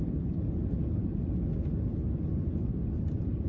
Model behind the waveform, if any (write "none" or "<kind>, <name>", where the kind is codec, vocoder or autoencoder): none